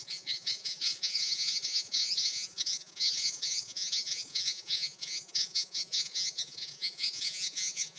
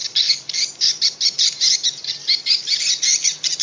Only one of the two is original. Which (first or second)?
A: second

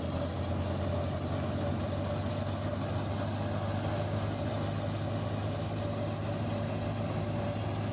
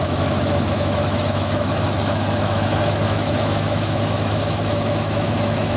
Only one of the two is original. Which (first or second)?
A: first